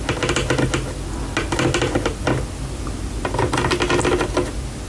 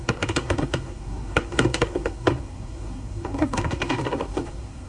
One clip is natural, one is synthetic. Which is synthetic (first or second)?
second